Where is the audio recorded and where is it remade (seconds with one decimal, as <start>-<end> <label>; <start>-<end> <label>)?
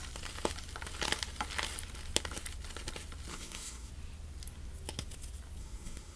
0.0-3.3 recorded; 3.3-3.9 remade; 3.9-5.6 recorded; 5.6-6.2 remade